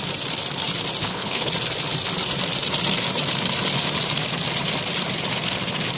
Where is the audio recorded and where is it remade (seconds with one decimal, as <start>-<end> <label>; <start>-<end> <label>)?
0.0-1.0 recorded; 1.0-1.5 remade; 1.5-6.0 recorded